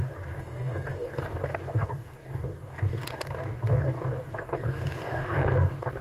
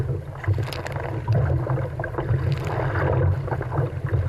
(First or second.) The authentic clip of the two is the second